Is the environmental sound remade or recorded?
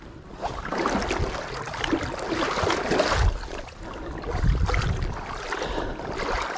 recorded